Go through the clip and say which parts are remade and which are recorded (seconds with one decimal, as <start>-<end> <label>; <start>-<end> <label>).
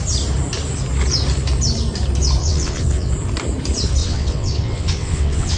0.0-2.4 recorded; 2.4-3.1 remade; 3.1-4.0 recorded; 4.0-5.6 remade